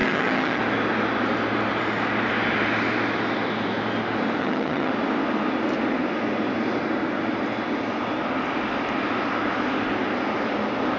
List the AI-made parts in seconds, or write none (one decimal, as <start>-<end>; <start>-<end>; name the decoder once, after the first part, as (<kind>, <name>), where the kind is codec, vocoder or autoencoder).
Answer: 0.0-0.6 (vocoder, HiFi-GAN); 4.4-4.9